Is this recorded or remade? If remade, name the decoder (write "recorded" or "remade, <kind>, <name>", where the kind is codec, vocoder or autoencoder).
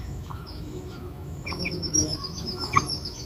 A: remade, autoencoder, DAC-VAE